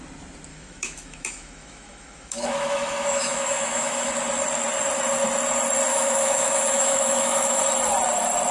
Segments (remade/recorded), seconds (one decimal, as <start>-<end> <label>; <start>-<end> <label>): 0.0-0.5 recorded; 0.5-4.1 remade; 4.1-5.9 recorded; 5.9-7.6 remade; 7.6-8.5 recorded